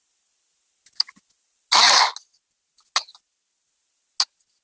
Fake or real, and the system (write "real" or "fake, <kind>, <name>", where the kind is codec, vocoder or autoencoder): real